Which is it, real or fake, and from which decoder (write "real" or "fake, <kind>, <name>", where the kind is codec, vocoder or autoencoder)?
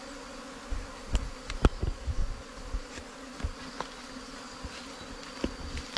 real